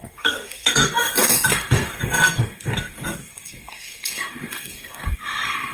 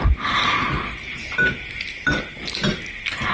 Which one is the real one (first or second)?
second